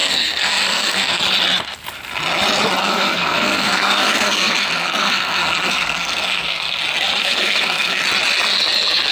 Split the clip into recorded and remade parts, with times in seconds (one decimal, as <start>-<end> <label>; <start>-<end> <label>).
0.0-1.2 remade; 1.2-2.8 recorded; 2.8-6.8 remade; 6.8-7.2 recorded; 7.2-8.0 remade; 8.0-9.1 recorded